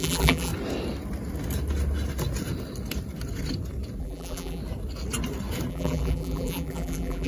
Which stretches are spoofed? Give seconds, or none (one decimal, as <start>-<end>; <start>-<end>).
0.0-0.5; 4.0-4.6; 5.7-7.3